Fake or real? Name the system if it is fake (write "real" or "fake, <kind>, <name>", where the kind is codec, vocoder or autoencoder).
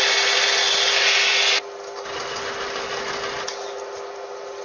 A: real